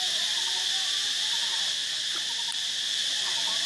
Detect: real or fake real